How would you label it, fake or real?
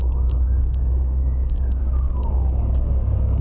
fake